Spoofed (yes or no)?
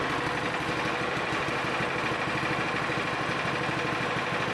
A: no